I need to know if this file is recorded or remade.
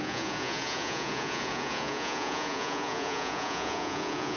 remade